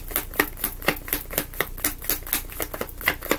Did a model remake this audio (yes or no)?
no